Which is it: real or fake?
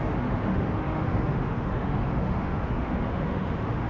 fake